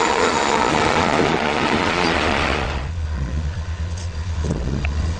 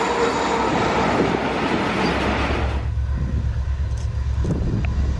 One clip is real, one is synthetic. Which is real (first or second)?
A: second